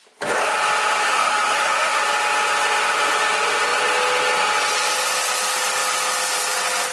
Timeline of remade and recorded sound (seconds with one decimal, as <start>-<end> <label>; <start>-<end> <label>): 0.0-1.0 recorded; 1.0-2.0 remade; 2.0-6.9 recorded